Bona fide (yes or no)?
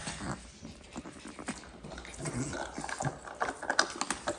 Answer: yes